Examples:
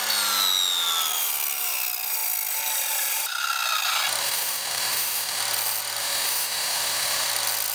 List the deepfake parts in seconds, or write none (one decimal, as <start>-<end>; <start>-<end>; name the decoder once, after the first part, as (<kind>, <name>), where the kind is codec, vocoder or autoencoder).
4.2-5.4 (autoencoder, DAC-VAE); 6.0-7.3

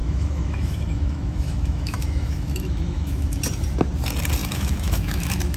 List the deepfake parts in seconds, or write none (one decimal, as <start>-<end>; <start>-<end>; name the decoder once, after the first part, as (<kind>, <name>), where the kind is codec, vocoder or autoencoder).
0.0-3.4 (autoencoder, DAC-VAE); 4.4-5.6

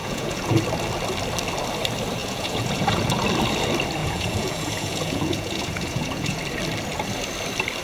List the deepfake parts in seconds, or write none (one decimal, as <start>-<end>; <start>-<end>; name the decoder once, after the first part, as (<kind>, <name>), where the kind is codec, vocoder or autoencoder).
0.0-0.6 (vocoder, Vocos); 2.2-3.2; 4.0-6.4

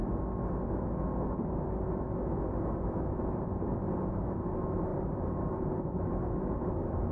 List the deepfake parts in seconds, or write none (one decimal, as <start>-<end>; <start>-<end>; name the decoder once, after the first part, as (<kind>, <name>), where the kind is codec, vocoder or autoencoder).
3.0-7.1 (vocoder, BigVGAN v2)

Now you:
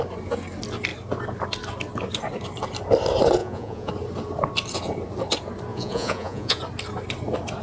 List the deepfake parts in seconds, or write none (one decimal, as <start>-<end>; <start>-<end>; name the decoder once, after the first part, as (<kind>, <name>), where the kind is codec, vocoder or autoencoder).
3.4-3.9 (vocoder, Vocos); 5.7-6.6

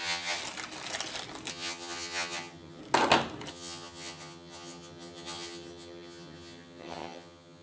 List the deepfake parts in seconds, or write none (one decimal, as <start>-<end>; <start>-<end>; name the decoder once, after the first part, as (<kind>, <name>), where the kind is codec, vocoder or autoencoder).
0.0-0.4 (vocoder, HiFi-GAN); 1.5-2.8; 3.5-7.6